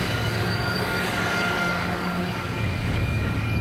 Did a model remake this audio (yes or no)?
yes